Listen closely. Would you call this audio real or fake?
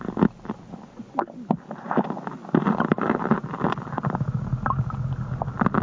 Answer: real